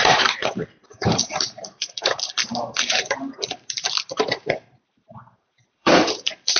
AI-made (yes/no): yes